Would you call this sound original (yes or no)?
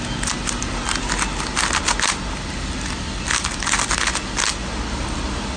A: yes